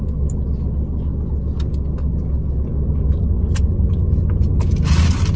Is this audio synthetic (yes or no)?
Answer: no